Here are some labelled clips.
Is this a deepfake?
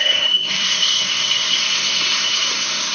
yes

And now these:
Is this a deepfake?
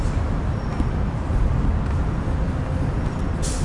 no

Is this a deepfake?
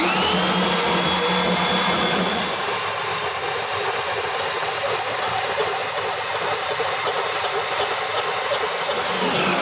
no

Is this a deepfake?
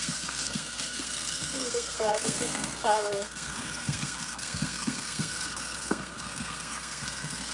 yes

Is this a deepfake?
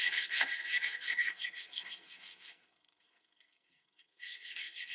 yes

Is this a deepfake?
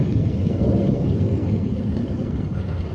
yes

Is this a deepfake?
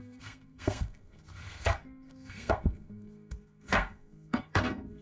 yes